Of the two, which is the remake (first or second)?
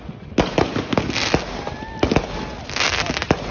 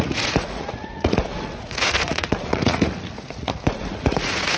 second